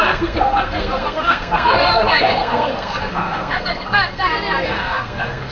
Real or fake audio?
fake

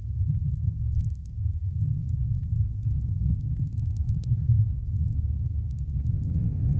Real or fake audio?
fake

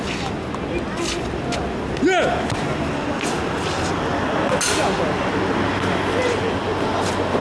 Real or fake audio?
real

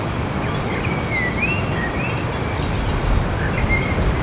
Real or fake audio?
real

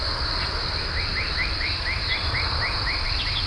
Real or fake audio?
real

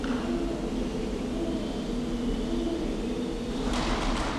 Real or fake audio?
real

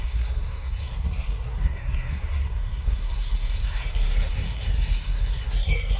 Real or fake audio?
fake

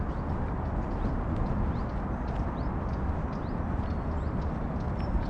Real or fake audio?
real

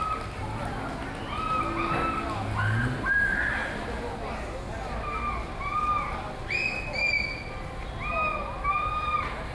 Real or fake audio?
real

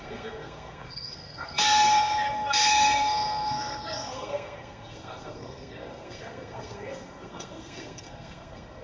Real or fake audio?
fake